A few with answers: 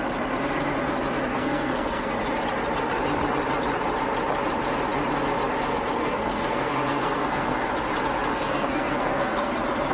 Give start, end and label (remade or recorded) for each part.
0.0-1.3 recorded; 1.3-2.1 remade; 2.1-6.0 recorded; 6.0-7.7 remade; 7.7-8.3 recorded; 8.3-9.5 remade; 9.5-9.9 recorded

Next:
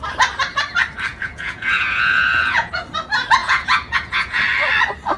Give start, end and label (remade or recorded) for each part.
0.0-1.1 recorded; 1.1-2.7 remade; 2.7-3.4 recorded; 3.4-4.4 remade; 4.4-5.2 recorded

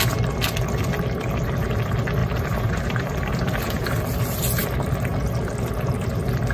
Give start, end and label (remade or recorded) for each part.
0.0-2.2 recorded; 2.2-4.0 remade; 4.0-6.5 recorded